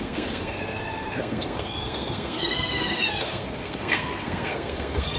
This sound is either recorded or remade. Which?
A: remade